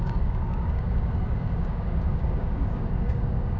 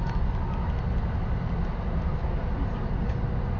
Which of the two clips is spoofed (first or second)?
first